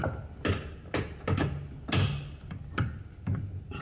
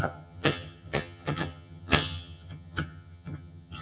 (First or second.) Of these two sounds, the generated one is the second